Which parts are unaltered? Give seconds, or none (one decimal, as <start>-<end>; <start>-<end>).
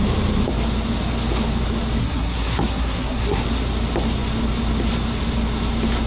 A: 0.0-2.0; 3.4-6.1